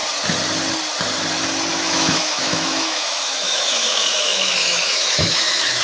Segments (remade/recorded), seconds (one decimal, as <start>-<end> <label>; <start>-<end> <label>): 0.0-1.7 recorded; 1.7-5.8 remade